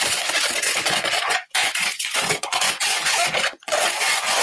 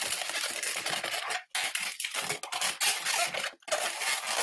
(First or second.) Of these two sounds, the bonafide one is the second